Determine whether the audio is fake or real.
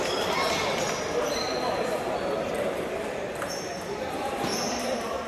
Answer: fake